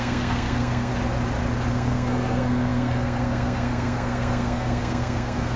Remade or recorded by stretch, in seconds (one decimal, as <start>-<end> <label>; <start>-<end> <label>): 0.0-0.9 remade; 0.9-1.7 recorded; 1.7-5.6 remade